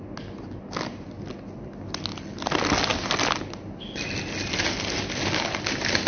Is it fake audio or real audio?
real